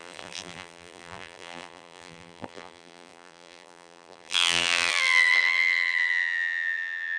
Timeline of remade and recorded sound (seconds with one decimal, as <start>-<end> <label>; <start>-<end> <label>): 0.0-7.2 remade